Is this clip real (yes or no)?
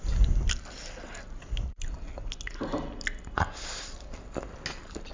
yes